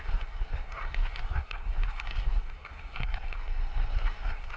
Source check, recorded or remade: remade